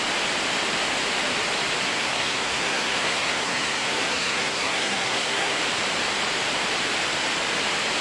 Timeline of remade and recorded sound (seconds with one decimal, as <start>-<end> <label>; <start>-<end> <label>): 0.0-1.9 recorded; 1.9-5.6 remade; 5.6-8.0 recorded